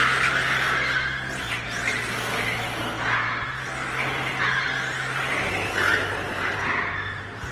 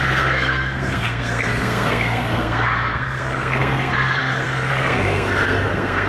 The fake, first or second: second